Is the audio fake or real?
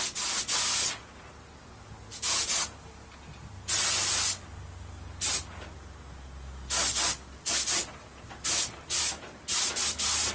real